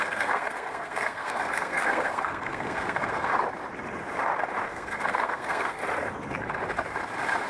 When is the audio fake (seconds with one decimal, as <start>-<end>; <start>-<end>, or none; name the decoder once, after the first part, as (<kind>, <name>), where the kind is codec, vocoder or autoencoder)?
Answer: 0.0-3.3 (codec, SNAC); 4.7-5.8